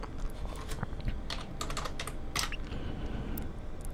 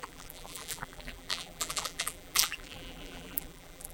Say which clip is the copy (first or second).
second